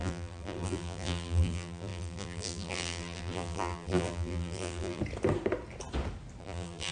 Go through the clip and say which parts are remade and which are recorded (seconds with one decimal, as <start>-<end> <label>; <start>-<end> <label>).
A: 0.0-5.0 remade; 5.0-6.4 recorded; 6.4-6.9 remade